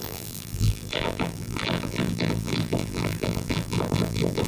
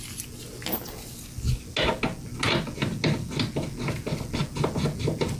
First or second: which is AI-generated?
first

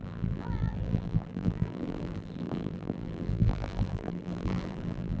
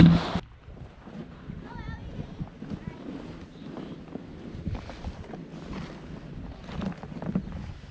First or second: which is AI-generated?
first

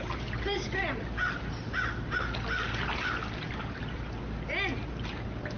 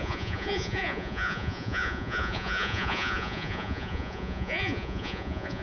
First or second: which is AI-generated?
second